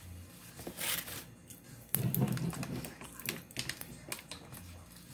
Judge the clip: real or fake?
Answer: real